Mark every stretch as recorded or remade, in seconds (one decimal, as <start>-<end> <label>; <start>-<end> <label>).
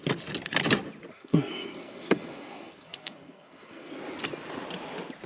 0.0-1.1 recorded; 1.1-3.9 remade; 3.9-5.3 recorded